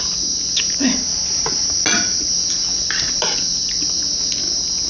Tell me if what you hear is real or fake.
real